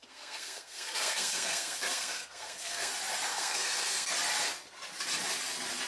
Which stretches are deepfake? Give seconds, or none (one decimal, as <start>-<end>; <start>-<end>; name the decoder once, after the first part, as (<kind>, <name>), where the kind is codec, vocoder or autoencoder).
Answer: 0.0-2.9 (codec, SNAC); 3.3-4.1